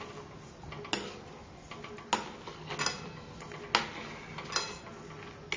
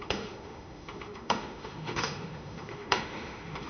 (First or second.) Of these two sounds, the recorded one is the first